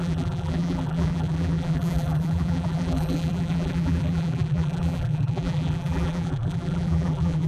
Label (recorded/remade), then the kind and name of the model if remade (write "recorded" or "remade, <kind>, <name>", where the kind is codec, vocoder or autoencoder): remade, vocoder, BigVGAN v2